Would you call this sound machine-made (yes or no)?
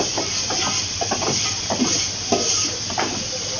no